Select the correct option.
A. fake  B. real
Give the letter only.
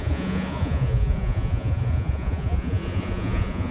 A